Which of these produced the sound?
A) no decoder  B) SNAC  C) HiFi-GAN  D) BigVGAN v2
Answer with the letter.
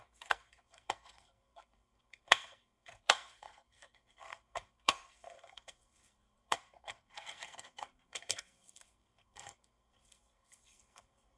B